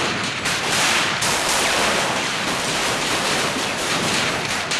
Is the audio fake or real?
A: fake